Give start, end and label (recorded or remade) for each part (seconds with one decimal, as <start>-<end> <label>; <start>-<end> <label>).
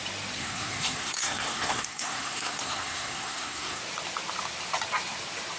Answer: 0.0-0.4 recorded; 0.4-3.8 remade; 3.8-5.6 recorded